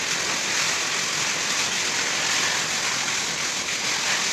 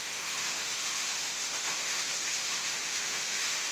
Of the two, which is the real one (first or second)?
first